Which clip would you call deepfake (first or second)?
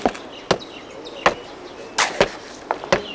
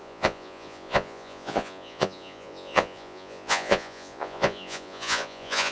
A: second